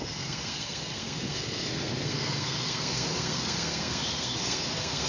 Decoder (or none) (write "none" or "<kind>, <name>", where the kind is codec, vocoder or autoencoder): codec, SNAC